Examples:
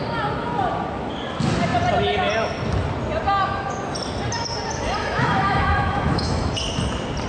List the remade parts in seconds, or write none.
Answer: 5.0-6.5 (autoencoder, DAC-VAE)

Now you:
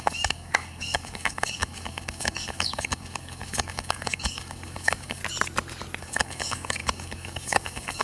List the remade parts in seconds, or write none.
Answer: 0.0-5.2 (codec, DAC); 6.0-8.0

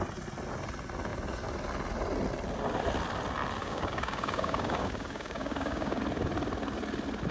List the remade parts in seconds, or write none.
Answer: 3.6-6.0 (codec, DAC)

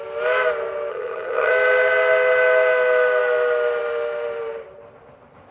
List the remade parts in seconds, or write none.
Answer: 0.9-1.5 (vocoder, HiFi-GAN)